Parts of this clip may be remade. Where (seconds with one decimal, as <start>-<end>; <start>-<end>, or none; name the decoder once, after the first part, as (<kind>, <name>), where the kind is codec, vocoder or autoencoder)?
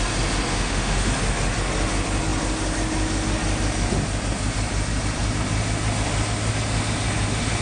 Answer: 0.5-1.1 (autoencoder, DAC-VAE)